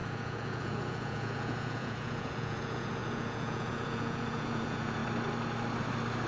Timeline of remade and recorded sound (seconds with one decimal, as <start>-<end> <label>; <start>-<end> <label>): 0.0-5.0 remade; 5.0-6.3 recorded